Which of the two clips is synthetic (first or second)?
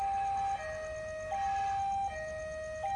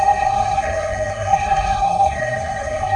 second